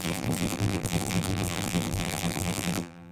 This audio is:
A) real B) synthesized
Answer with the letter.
B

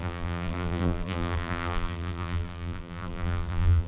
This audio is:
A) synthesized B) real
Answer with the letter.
A